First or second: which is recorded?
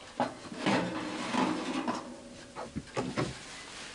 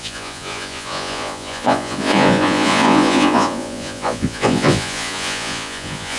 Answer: first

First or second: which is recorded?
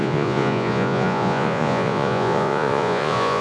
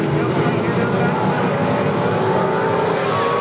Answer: second